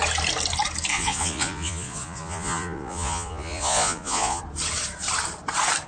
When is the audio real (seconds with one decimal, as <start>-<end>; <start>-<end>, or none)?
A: 0.0-0.9; 4.4-5.9

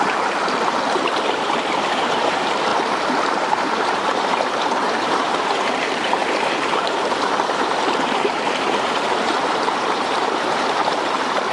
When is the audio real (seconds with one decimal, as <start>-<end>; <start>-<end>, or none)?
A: 2.7-3.4

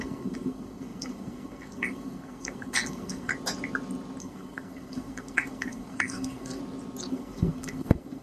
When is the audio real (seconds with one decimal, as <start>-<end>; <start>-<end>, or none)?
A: 3.3-4.2; 6.6-7.1

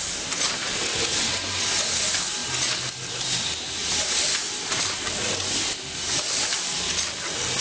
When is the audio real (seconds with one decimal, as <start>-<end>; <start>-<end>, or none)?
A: 0.0-3.8; 5.2-7.6

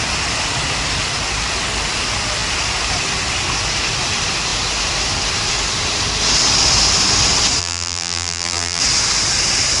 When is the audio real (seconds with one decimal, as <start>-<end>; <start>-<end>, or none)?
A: 0.0-7.6; 8.8-9.8

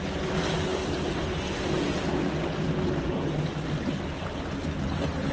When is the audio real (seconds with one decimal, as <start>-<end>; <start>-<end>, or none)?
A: 0.0-5.3